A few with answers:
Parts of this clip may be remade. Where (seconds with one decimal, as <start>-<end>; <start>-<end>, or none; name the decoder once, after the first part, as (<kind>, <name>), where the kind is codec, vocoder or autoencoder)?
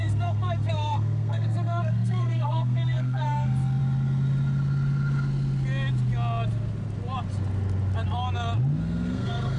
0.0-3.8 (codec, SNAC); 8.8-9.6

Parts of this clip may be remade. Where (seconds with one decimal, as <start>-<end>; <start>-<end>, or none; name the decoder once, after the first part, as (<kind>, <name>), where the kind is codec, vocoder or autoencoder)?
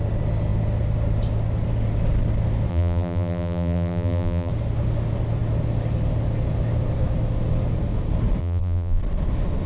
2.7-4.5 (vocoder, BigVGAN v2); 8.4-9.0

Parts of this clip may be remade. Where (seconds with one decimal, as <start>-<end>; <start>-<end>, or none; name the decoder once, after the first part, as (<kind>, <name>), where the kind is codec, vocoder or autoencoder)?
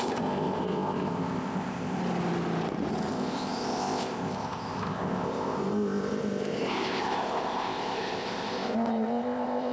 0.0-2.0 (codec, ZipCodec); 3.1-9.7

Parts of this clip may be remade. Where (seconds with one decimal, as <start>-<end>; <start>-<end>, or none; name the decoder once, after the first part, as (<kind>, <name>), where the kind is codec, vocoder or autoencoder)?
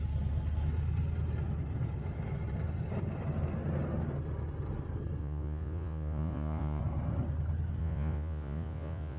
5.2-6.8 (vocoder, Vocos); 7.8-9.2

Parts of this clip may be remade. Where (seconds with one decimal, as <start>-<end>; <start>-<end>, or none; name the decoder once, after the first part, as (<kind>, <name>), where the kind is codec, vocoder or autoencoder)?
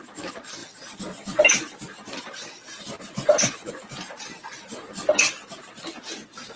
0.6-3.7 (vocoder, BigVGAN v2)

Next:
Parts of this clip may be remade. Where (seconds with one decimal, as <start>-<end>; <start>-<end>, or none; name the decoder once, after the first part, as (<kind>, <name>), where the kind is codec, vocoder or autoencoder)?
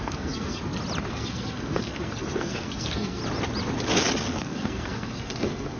0.0-0.6 (codec, SNAC); 1.1-3.2; 4.4-5.8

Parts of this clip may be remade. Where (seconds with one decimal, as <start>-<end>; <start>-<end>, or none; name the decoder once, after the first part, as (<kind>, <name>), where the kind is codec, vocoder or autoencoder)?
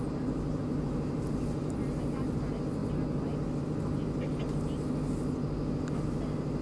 none